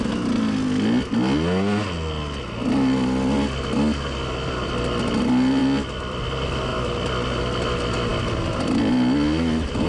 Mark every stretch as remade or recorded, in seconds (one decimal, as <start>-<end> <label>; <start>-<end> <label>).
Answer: 0.0-5.6 recorded; 5.6-6.2 remade; 6.2-6.7 recorded; 6.7-7.4 remade; 7.4-9.9 recorded